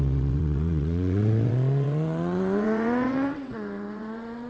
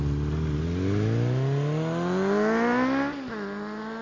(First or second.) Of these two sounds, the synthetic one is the first